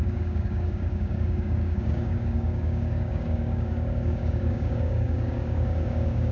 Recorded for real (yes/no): no